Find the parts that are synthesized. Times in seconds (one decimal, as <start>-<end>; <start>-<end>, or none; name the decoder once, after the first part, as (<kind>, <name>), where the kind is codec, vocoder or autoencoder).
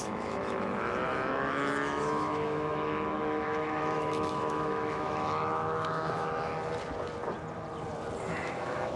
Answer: 0.0-6.5 (autoencoder, DAC-VAE); 8.5-9.0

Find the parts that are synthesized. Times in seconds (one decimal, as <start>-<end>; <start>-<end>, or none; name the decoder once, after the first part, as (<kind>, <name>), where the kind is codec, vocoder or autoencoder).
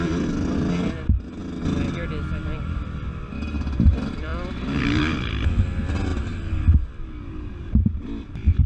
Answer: none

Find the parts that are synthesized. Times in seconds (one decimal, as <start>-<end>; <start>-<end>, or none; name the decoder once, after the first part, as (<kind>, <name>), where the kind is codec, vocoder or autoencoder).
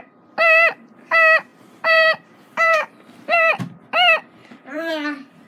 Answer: 1.5-3.6 (vocoder, BigVGAN v2); 4.4-4.9